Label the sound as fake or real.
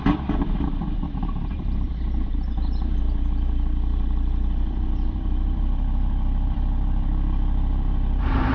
fake